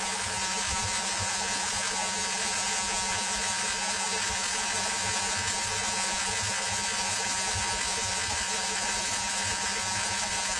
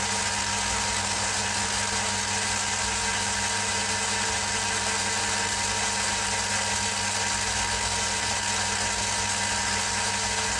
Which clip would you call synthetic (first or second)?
first